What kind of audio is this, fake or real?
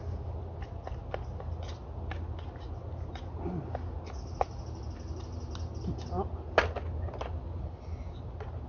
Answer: real